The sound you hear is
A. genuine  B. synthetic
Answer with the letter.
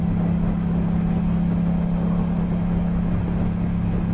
A